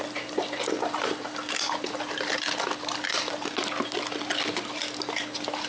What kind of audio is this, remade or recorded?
recorded